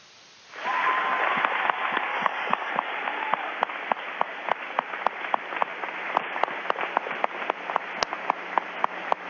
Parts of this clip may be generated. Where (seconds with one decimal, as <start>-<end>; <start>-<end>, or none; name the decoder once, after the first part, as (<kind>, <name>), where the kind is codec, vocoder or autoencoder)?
2.1-2.7 (codec, DAC)